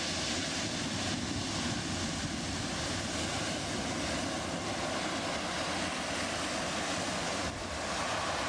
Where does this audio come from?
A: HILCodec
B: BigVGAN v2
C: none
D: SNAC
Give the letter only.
C